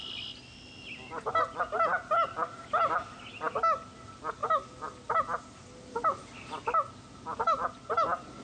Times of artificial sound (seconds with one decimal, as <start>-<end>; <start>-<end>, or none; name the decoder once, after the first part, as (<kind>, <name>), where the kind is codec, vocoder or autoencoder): none